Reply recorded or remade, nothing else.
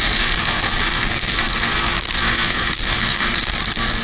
remade